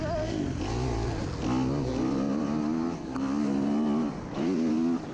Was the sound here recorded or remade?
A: recorded